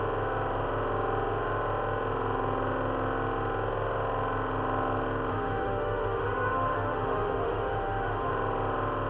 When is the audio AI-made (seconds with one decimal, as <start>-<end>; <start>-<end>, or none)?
5.3-8.3